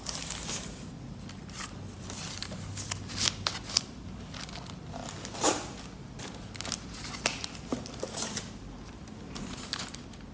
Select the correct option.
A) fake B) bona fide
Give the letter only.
B